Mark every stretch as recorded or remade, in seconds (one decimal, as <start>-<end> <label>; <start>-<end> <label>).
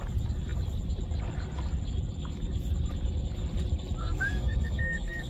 0.0-4.0 recorded; 4.0-5.3 remade